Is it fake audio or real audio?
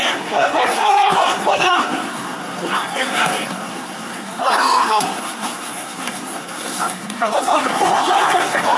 fake